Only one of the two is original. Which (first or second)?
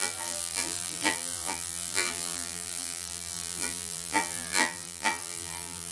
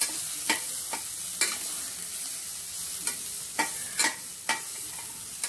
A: second